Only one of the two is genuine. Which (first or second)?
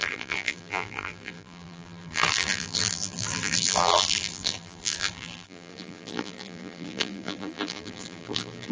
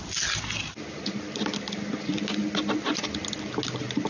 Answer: second